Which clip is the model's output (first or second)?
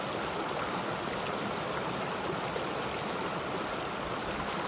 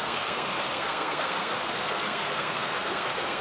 second